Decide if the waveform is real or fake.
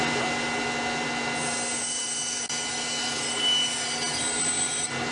real